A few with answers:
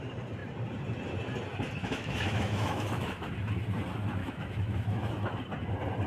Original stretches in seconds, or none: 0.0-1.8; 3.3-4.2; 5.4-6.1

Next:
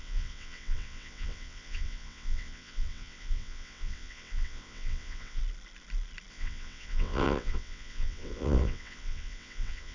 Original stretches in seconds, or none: 5.4-6.3

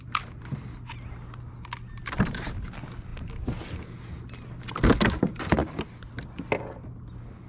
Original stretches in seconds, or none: 0.0-7.5

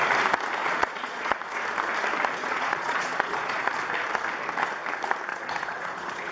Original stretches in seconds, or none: 0.0-0.6; 1.4-2.4; 3.6-5.3

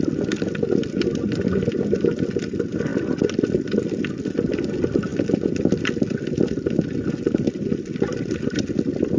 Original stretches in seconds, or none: 0.0-9.2

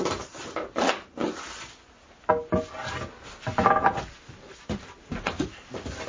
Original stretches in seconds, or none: 0.0-6.1